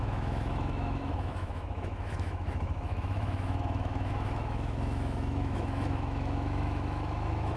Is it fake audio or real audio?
fake